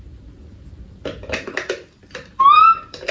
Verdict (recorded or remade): recorded